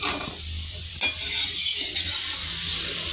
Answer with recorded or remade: recorded